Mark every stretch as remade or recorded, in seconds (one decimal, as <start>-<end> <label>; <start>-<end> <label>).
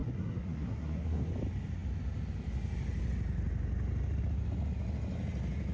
0.0-1.3 remade; 1.3-5.7 recorded